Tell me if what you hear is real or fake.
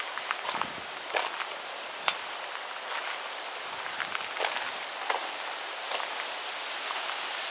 real